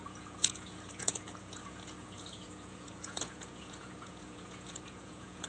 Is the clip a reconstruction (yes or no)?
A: yes